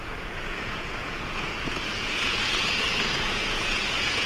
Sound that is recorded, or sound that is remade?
remade